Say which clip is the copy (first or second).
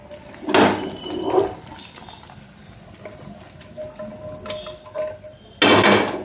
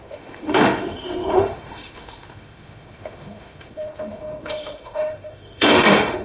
second